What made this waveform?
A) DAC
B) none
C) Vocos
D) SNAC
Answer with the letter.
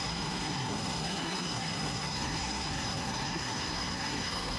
D